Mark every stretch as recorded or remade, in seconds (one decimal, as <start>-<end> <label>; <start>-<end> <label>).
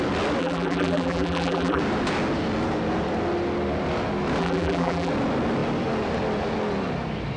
0.0-0.4 recorded; 0.4-1.8 remade; 1.8-4.4 recorded; 4.4-5.1 remade; 5.1-7.4 recorded